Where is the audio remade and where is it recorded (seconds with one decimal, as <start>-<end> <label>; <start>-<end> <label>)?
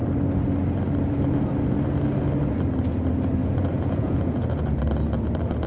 0.0-3.4 recorded; 3.4-4.8 remade; 4.8-5.7 recorded